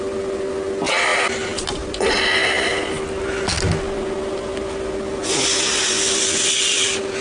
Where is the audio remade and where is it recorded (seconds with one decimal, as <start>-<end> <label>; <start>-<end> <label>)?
0.0-7.2 recorded